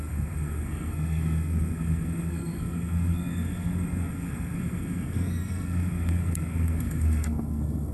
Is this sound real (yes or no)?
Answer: no